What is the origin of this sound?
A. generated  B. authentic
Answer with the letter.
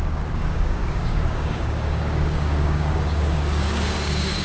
A